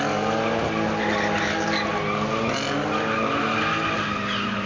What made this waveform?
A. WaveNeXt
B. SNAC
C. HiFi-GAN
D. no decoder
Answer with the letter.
D